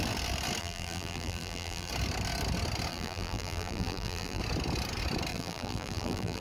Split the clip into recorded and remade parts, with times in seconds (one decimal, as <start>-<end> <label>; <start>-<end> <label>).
0.0-0.6 recorded; 0.6-1.9 remade; 1.9-2.9 recorded; 2.9-4.4 remade; 4.4-5.3 recorded; 5.3-6.4 remade